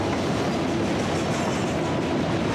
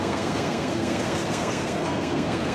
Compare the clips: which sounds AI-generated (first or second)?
second